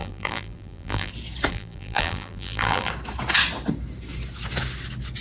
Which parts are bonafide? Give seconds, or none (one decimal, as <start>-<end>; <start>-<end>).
1.1-1.5; 2.9-5.2